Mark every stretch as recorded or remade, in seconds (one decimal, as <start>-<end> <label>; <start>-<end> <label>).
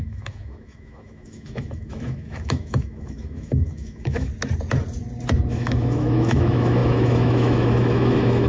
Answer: 0.0-4.3 remade; 4.3-5.5 recorded; 5.5-8.5 remade